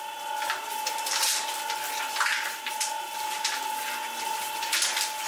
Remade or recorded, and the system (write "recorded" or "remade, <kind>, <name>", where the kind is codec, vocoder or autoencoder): recorded